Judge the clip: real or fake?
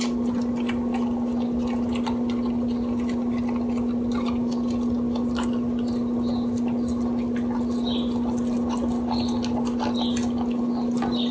real